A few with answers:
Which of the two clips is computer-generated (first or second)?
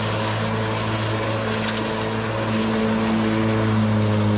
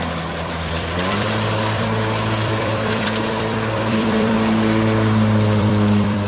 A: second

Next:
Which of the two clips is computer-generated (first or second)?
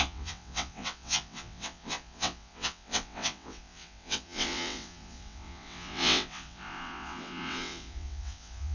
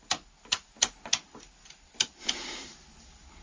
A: first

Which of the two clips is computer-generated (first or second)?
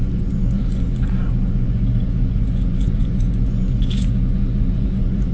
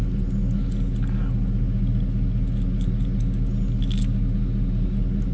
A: first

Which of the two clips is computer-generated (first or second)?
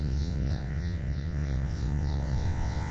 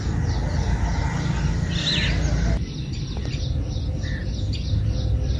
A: first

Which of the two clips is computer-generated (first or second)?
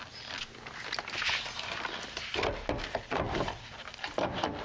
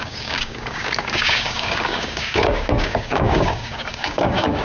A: second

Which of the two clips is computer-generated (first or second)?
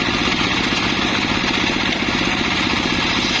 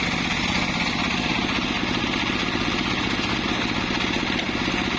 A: first